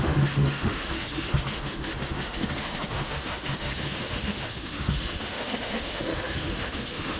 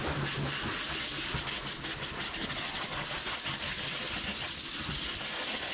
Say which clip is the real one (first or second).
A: second